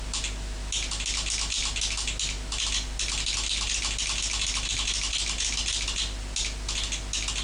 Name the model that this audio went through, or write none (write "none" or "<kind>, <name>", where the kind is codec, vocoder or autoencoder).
none